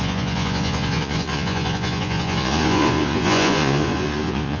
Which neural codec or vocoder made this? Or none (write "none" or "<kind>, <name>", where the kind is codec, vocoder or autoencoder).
vocoder, Vocos